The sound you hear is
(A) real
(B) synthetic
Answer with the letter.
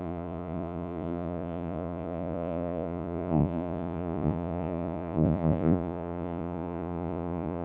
B